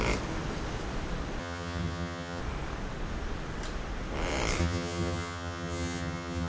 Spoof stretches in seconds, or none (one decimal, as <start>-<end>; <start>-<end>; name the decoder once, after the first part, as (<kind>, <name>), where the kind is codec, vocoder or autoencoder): 1.4-2.4 (vocoder, HiFi-GAN); 4.6-6.5